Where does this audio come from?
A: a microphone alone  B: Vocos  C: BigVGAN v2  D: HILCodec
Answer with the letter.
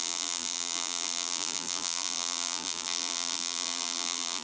C